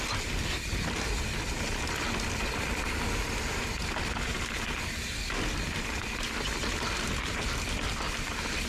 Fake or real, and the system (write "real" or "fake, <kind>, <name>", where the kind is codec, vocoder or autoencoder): real